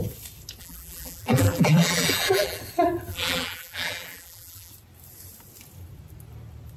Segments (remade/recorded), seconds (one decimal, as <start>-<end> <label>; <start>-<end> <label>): 0.0-0.6 recorded; 0.6-2.6 remade; 2.6-3.1 recorded; 3.1-4.7 remade; 4.7-6.8 recorded